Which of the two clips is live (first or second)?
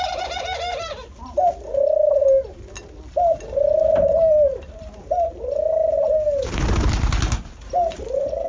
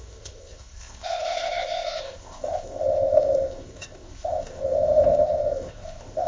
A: first